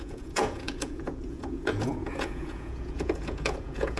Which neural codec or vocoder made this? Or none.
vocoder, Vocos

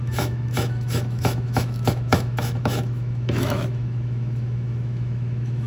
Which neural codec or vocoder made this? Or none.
autoencoder, DAC-VAE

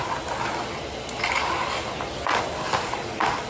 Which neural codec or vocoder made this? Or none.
none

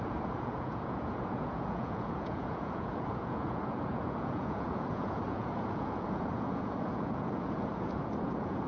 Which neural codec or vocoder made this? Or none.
vocoder, Vocos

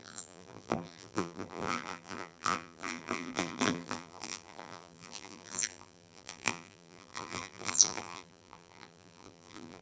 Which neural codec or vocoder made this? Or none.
vocoder, BigVGAN v2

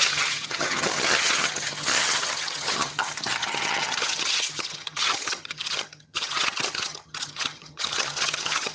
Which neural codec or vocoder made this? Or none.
vocoder, HiFi-GAN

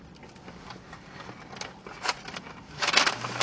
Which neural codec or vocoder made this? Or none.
none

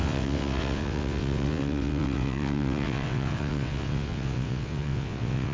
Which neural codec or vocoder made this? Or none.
vocoder, WaveNeXt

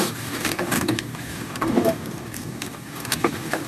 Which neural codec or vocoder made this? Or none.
codec, DAC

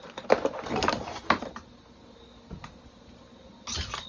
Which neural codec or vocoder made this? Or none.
none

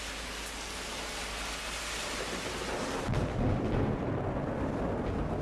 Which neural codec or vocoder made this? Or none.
none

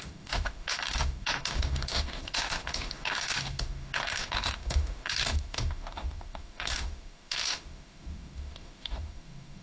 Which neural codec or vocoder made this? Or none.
autoencoder, DAC-VAE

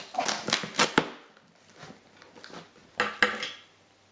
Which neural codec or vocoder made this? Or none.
none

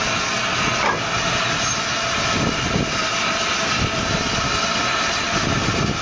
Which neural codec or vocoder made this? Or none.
none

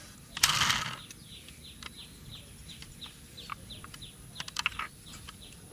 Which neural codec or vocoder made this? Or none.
none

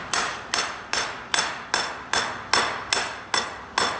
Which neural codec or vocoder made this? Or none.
none